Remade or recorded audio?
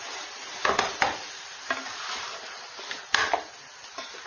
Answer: recorded